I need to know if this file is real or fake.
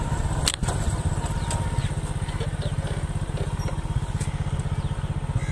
real